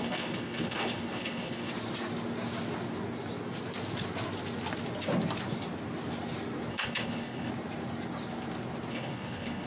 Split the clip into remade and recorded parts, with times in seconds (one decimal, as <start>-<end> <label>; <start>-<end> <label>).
0.0-1.7 remade; 1.7-6.7 recorded; 6.7-7.5 remade; 7.5-8.9 recorded; 8.9-9.7 remade